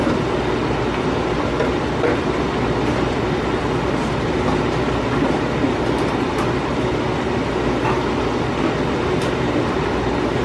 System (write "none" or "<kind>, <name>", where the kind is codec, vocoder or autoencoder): none